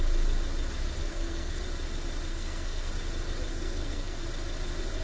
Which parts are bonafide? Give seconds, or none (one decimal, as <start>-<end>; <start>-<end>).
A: 0.0-1.0; 1.6-2.3; 2.9-3.5; 4.2-5.0